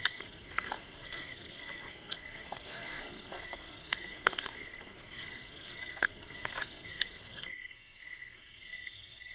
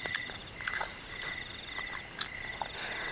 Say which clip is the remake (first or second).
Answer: first